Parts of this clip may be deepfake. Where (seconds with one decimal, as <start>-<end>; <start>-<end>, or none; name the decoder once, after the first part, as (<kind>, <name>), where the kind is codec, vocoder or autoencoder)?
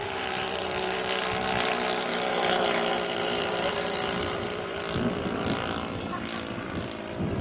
0.0-1.0 (vocoder, BigVGAN v2); 2.1-4.8